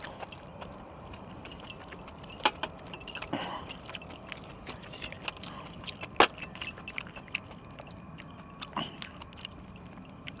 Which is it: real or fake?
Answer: real